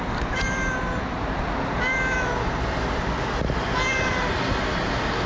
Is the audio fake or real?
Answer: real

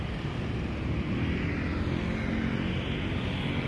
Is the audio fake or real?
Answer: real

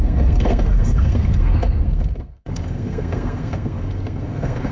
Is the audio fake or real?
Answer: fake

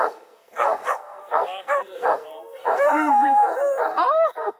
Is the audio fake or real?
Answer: fake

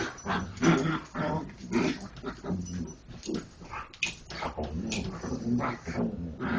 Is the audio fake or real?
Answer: real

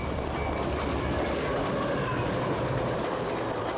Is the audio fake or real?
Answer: real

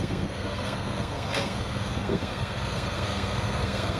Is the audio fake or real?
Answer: fake